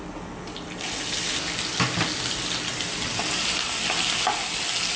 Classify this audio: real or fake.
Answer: real